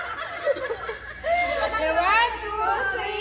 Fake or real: real